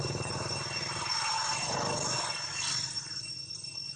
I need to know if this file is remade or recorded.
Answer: recorded